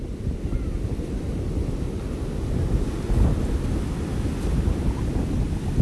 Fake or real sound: real